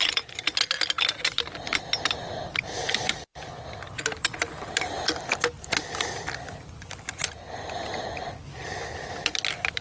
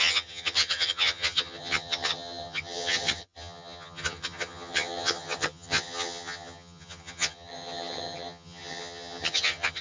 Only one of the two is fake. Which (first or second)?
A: second